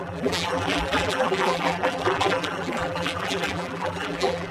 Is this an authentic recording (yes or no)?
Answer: no